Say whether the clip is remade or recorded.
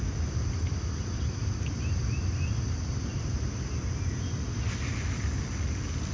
recorded